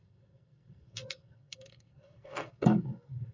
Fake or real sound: fake